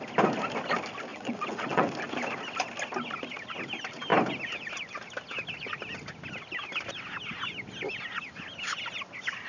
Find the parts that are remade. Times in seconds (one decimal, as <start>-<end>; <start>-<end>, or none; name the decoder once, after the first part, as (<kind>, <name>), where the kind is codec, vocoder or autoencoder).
1.1-1.9 (vocoder, WaveNeXt)

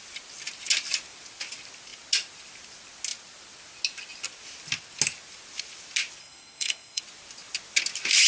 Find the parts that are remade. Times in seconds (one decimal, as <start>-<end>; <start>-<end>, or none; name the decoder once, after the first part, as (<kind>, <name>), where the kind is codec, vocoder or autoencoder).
6.2-7.0 (codec, SNAC)

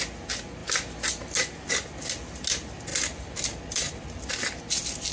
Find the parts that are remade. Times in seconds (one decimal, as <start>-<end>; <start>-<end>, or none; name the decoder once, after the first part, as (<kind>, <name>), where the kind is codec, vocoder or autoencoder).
2.9-4.6 (vocoder, BigVGAN v2)